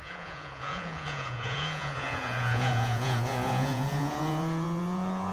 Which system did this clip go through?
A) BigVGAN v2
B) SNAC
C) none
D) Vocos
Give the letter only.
D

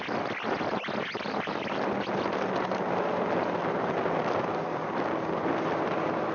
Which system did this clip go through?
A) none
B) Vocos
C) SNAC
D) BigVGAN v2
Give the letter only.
A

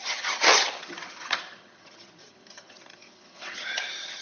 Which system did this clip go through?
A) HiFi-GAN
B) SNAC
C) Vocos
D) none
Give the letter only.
A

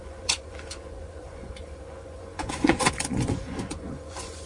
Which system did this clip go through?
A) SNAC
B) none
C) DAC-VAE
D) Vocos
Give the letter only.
D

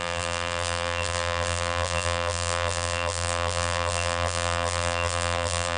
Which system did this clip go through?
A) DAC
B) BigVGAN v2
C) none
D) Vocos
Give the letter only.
B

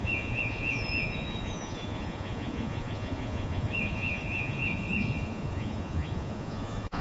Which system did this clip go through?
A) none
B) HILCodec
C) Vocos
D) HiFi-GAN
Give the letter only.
C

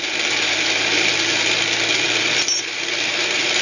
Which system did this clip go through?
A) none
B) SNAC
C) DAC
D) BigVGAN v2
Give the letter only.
A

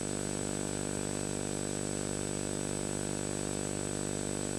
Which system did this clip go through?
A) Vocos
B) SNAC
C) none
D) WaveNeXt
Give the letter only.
C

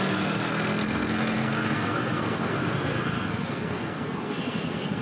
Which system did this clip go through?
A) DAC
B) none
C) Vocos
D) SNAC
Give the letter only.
D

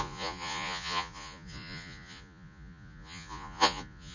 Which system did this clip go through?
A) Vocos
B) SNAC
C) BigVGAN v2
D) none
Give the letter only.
A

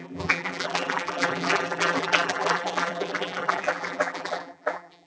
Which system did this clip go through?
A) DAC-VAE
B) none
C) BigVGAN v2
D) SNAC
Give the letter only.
C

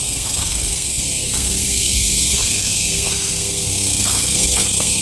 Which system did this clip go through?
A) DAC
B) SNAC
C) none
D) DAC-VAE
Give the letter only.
B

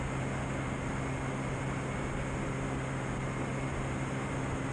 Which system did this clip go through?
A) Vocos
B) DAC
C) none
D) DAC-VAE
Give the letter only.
C